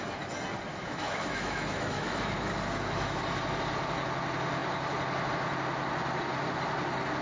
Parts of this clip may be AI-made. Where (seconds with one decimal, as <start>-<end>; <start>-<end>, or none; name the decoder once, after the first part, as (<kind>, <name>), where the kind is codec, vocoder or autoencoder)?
0.7-3.2 (autoencoder, DAC-VAE)